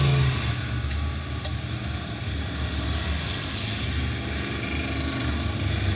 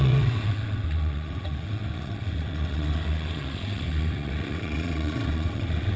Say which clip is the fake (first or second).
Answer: second